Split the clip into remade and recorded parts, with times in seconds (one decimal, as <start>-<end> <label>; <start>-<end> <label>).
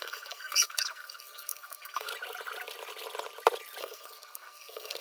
0.0-2.1 remade; 2.1-3.8 recorded; 3.8-5.0 remade